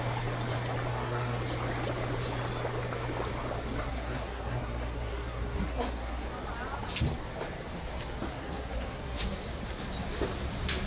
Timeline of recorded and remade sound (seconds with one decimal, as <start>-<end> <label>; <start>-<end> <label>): 0.0-0.9 recorded; 0.9-1.4 remade; 1.4-3.8 recorded; 3.8-6.3 remade; 6.3-8.4 recorded; 8.4-9.2 remade; 9.2-10.9 recorded